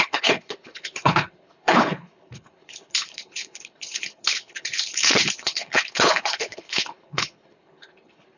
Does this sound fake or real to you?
fake